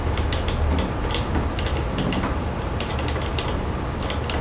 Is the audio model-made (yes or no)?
no